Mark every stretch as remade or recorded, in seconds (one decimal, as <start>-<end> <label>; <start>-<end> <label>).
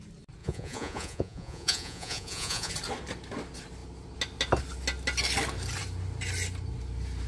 0.0-0.4 recorded; 0.4-2.7 remade; 2.7-7.3 recorded